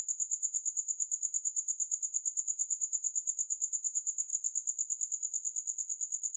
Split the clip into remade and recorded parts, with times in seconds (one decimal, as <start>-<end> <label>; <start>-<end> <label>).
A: 0.0-4.3 remade; 4.3-6.4 recorded